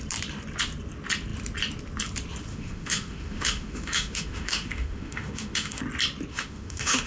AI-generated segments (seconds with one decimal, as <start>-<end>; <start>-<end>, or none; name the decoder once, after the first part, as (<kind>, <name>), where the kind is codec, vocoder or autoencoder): 2.5-5.8 (autoencoder, DAC-VAE); 6.3-7.1